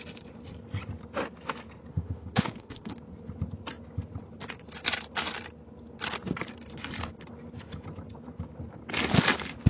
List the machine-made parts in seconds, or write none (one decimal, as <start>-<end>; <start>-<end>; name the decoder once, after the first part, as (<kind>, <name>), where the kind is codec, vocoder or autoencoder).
1.9-2.9 (autoencoder, DAC-VAE)